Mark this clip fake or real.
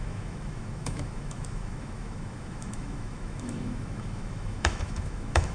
fake